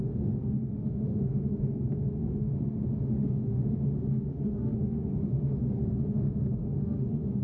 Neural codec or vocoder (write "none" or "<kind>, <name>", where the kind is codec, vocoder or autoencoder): autoencoder, DAC-VAE